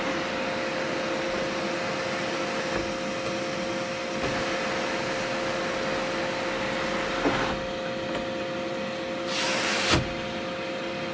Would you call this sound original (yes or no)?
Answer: yes